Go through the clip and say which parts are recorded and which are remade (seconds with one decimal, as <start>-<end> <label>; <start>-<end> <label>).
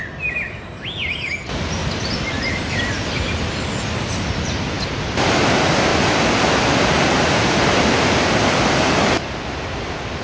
0.0-5.9 recorded; 5.9-8.6 remade; 8.6-10.2 recorded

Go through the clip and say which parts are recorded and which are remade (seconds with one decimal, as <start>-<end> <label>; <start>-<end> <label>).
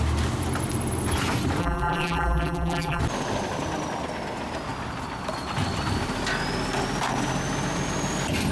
0.0-1.6 recorded; 1.6-3.0 remade; 3.0-8.5 recorded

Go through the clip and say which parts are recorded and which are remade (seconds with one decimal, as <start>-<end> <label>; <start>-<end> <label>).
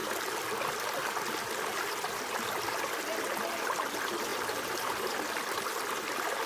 0.0-4.3 recorded; 4.3-5.2 remade; 5.2-6.5 recorded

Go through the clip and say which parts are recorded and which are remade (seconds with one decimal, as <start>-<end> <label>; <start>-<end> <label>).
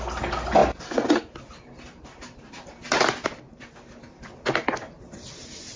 0.0-5.8 recorded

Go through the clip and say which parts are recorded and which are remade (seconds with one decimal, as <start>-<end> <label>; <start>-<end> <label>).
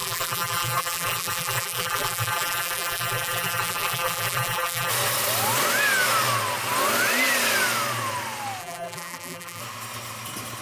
0.0-4.9 remade; 4.9-8.6 recorded; 8.6-9.6 remade; 9.6-10.6 recorded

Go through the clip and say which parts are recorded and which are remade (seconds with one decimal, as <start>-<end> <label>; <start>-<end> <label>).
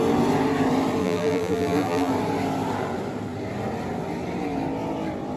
0.0-1.0 recorded; 1.0-2.1 remade; 2.1-5.4 recorded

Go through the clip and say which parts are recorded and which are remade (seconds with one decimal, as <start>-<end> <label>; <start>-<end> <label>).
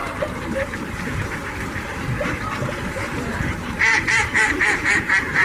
0.0-5.4 remade